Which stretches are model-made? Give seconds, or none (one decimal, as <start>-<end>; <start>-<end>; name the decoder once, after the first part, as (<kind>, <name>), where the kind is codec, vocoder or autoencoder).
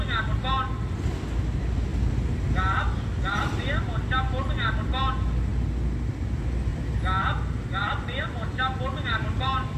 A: none